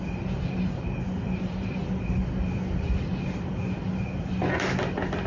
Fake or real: real